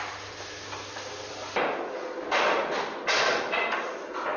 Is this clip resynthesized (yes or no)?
no